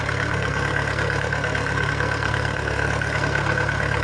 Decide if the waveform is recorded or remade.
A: remade